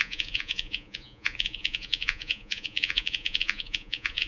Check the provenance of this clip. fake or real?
fake